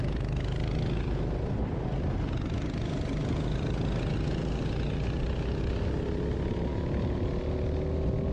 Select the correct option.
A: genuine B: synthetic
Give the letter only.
A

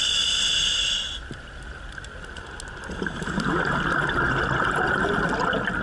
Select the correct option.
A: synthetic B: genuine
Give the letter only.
B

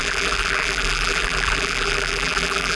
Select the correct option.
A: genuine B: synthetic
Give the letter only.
B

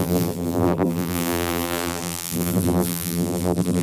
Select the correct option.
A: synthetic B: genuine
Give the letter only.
A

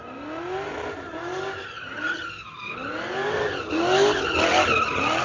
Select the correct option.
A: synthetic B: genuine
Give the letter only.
B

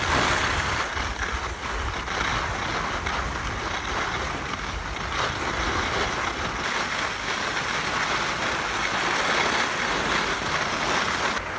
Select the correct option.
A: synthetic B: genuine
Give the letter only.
B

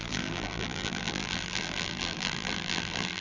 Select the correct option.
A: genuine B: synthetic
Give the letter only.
B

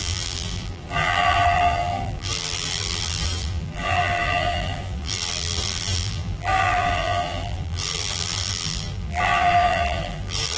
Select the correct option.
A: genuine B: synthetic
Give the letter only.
B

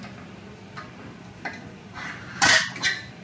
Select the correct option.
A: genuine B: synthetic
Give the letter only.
A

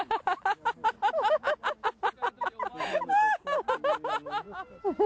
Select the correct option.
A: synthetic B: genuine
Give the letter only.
B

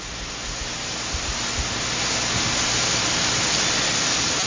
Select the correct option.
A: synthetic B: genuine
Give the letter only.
B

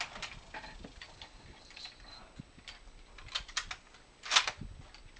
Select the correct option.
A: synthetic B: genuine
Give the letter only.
B